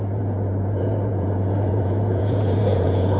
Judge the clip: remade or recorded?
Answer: remade